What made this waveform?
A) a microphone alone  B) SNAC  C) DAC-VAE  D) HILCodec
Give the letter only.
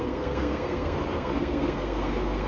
B